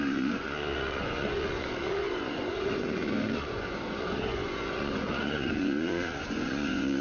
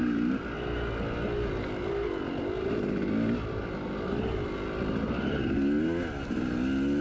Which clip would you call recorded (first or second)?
second